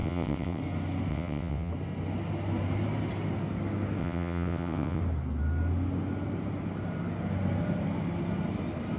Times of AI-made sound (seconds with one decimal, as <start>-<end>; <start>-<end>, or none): 0.0-0.6; 1.1-1.7; 4.0-5.0